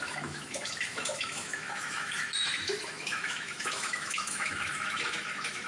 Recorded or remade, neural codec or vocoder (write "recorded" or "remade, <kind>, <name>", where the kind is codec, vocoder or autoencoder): remade, autoencoder, DAC-VAE